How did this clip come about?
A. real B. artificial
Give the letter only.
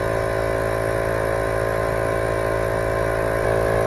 A